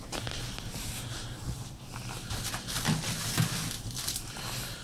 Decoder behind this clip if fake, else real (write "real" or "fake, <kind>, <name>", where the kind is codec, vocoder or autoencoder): fake, vocoder, BigVGAN v2